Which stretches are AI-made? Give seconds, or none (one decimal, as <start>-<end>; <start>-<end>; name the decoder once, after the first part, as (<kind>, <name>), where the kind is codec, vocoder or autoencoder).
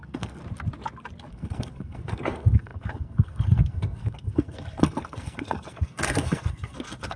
0.0-0.4 (codec, SNAC); 1.3-7.2